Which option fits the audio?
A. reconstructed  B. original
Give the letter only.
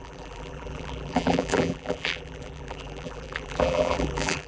A